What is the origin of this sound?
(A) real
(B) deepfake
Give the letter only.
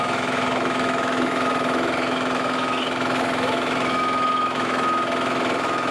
B